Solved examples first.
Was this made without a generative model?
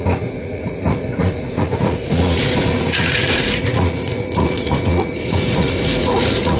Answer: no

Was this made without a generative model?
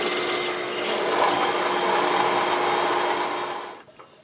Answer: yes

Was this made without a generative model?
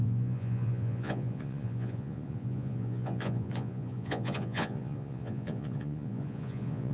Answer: no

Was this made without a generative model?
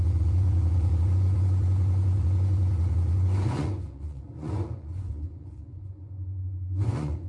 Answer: no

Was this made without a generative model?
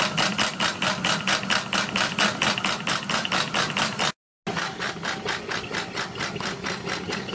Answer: yes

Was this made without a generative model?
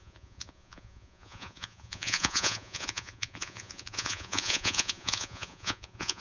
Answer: no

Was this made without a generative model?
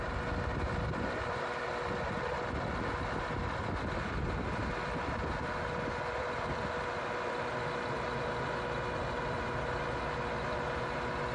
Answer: yes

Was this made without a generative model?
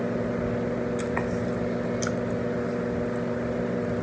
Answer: yes